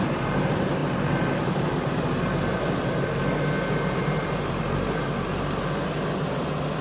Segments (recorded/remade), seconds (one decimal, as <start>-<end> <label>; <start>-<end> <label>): 0.0-6.8 recorded